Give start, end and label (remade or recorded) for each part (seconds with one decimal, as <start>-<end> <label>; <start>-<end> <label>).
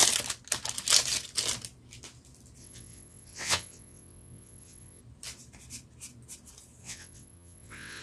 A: 0.0-2.6 recorded; 2.6-5.0 remade; 5.0-6.8 recorded; 6.8-8.0 remade